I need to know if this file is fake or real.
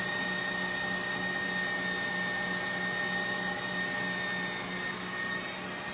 real